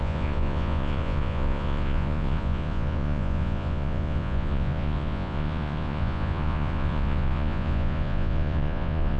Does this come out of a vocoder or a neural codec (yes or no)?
yes